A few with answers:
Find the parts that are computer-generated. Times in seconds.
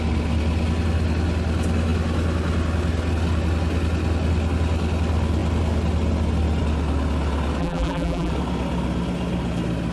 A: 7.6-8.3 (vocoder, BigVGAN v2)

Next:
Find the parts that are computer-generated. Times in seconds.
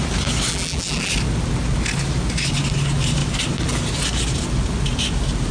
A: 0.5-1.1 (vocoder, BigVGAN v2)